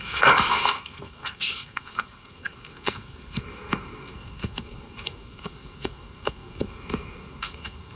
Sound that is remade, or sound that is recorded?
remade